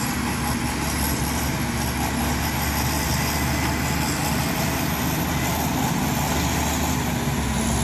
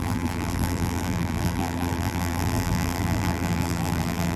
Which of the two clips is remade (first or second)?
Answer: second